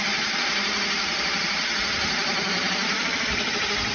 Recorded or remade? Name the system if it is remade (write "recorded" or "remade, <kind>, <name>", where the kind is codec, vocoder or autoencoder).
recorded